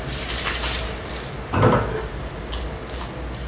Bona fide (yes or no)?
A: yes